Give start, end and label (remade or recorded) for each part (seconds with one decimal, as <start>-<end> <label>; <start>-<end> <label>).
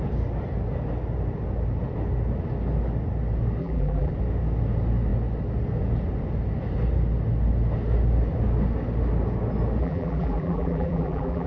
0.0-3.6 recorded; 3.6-4.1 remade; 4.1-9.8 recorded; 9.8-11.5 remade